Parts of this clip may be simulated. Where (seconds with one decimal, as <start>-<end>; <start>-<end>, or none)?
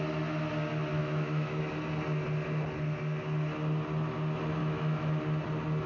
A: 1.0-1.6; 4.6-5.2